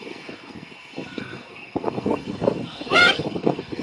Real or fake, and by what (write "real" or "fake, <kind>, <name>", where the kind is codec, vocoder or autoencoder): fake, codec, SNAC